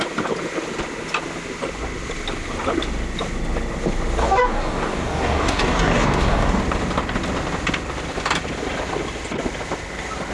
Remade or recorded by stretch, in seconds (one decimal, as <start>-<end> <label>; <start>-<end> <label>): 0.0-4.2 recorded; 4.2-6.6 remade; 6.6-10.3 recorded